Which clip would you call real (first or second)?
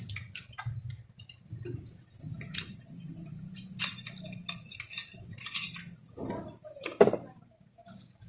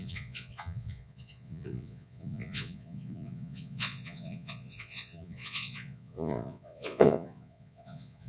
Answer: first